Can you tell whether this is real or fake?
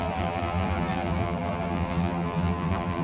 fake